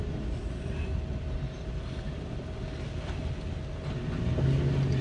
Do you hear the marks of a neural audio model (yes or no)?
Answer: no